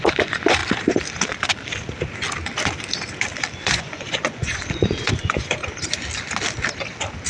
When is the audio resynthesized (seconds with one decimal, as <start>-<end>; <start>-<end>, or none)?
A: 0.0-0.6; 3.5-5.6